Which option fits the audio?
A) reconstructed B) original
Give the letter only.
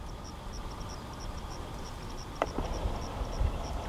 B